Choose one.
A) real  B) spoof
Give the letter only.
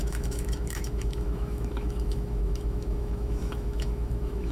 B